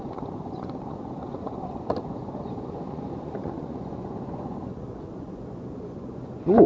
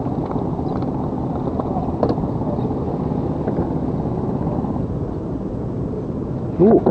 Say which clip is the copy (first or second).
first